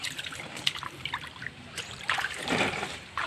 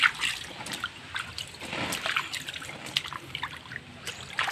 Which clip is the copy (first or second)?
first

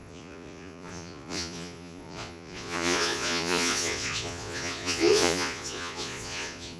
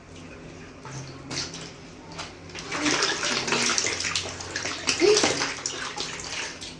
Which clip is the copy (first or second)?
first